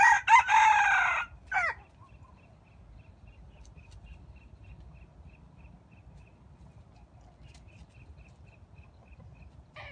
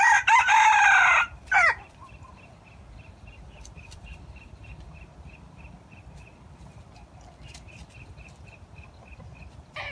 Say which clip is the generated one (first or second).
second